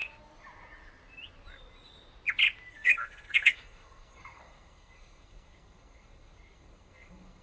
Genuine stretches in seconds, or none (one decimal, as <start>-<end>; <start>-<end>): 0.0-2.7